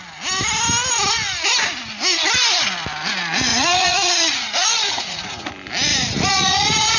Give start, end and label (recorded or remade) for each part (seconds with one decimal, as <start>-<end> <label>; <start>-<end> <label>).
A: 0.0-3.5 recorded; 3.5-5.5 remade; 5.5-5.9 recorded; 5.9-7.0 remade